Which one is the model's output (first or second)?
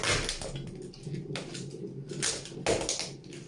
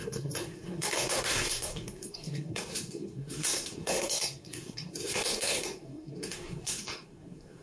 second